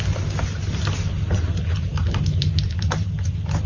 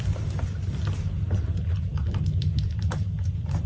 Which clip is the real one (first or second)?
first